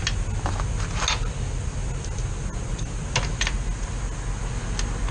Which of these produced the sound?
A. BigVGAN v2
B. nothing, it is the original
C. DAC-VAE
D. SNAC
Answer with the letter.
B